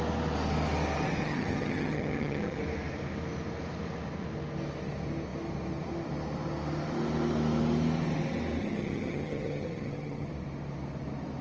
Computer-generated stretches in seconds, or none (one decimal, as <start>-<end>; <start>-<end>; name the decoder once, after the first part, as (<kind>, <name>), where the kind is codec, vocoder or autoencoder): 1.2-2.6 (vocoder, HiFi-GAN); 8.6-10.3